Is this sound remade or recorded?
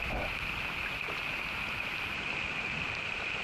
recorded